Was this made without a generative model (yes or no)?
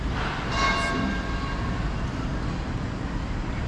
yes